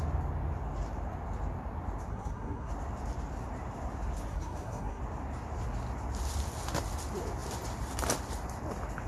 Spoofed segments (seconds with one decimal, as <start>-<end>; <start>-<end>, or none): 2.1-2.7; 4.3-5.0